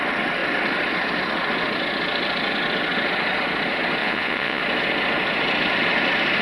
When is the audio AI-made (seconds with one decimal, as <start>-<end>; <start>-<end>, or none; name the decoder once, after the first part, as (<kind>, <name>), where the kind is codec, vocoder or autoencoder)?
4.0-4.6 (vocoder, Vocos)